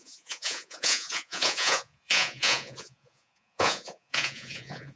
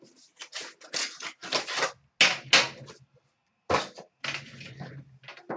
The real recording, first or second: second